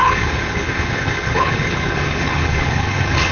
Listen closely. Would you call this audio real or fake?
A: fake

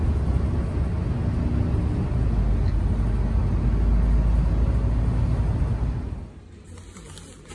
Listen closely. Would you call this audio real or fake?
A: real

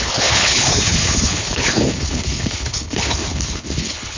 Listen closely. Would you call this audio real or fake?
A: fake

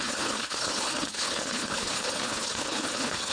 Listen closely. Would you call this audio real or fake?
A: fake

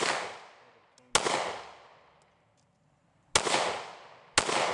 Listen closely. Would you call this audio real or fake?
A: real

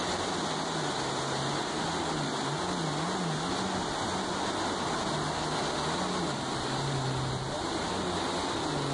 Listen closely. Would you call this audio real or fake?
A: real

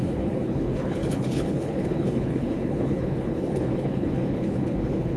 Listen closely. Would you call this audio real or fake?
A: fake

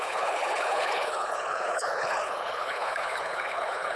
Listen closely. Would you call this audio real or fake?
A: fake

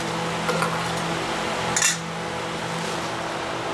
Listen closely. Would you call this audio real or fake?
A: real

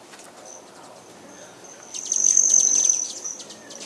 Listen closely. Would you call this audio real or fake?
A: real